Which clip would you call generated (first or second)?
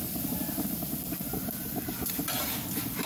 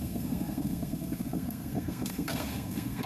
second